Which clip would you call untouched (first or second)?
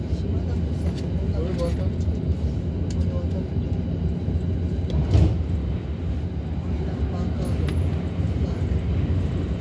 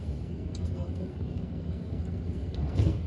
first